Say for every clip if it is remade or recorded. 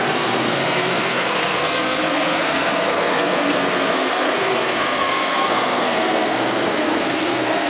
remade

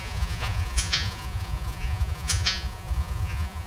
remade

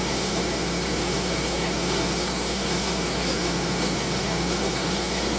remade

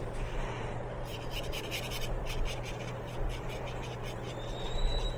remade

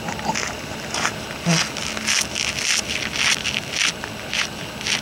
recorded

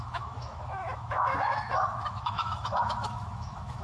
remade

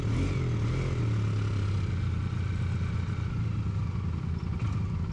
recorded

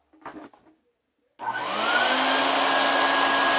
recorded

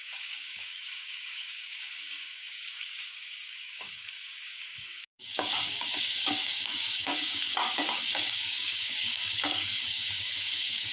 remade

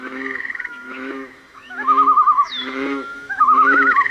remade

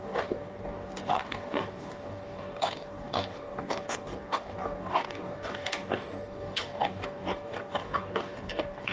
remade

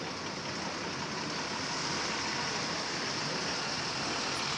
recorded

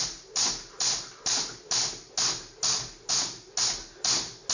recorded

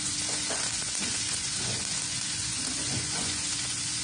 remade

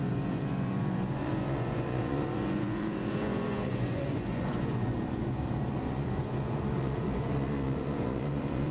remade